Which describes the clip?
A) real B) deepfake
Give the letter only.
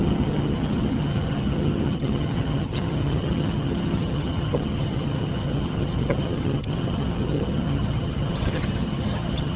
B